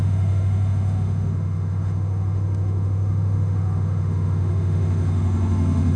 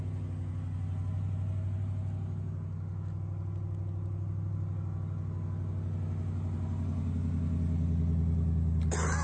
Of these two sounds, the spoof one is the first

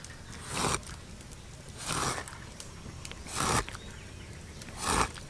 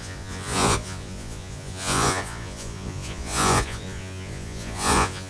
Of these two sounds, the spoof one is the second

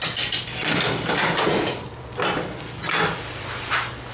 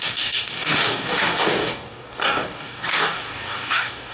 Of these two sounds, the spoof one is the second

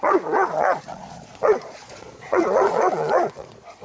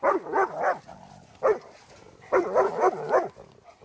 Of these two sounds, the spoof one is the first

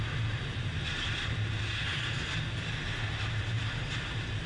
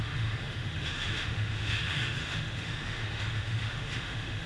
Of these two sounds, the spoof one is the second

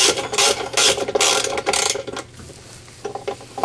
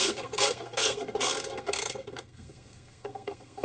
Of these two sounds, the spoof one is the second